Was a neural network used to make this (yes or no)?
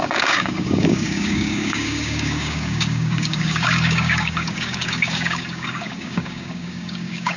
yes